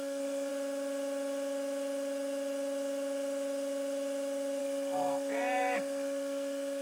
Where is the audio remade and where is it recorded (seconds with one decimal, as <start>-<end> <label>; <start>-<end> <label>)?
0.0-0.5 remade; 0.5-4.6 recorded; 4.6-6.8 remade